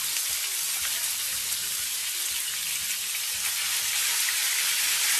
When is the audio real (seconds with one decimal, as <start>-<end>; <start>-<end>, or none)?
0.0-5.2